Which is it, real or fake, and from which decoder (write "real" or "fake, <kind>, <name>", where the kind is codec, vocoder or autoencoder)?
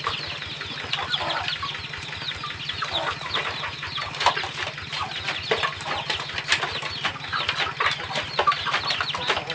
real